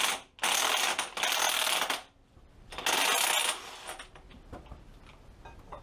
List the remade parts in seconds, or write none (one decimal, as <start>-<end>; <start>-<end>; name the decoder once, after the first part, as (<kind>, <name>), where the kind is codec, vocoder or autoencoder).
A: none